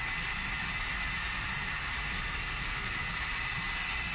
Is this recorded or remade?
recorded